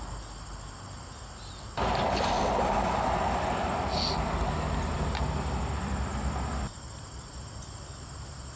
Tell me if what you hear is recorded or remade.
recorded